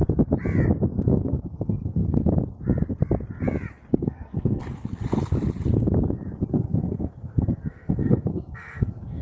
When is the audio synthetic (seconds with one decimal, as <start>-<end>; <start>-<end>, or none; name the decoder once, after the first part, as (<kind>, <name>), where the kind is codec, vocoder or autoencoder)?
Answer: 1.1-2.0 (codec, SNAC); 3.9-4.6; 6.5-9.2

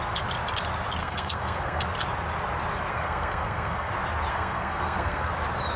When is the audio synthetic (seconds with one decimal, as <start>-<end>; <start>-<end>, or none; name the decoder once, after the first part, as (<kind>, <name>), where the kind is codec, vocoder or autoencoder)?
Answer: 1.0-1.8 (codec, SNAC); 2.9-3.9; 4.3-5.3

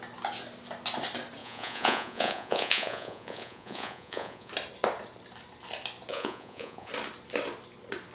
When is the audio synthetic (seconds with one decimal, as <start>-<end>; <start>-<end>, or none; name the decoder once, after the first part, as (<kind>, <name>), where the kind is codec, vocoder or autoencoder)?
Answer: 1.4-4.5 (vocoder, Vocos); 6.1-6.9

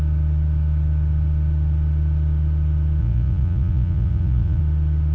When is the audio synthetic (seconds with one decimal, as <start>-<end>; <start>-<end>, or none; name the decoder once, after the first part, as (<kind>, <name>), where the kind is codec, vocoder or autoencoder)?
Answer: 3.0-4.6 (vocoder, Vocos)

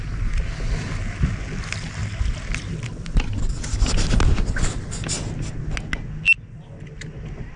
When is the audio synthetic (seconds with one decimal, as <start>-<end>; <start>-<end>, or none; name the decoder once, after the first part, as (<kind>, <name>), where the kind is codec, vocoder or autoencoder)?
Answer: none